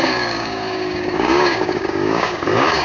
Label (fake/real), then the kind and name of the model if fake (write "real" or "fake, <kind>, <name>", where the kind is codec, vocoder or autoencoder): fake, codec, DAC